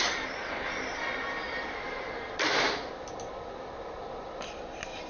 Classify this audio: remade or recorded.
recorded